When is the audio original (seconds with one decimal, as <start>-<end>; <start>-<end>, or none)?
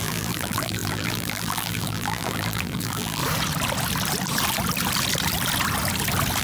3.2-6.4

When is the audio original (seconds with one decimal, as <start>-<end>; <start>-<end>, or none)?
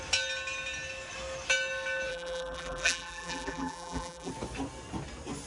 0.0-2.1; 4.3-5.5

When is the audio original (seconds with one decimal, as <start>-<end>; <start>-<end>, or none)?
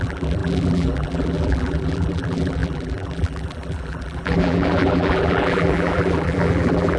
none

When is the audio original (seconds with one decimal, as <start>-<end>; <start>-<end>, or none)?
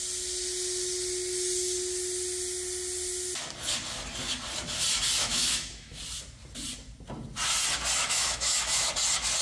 0.0-5.2; 6.0-8.0; 8.9-9.4